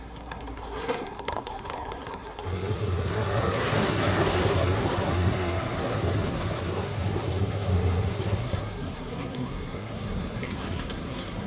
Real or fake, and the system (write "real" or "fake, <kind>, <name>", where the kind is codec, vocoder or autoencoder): fake, codec, SNAC